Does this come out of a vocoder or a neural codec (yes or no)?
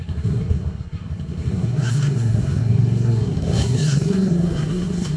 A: yes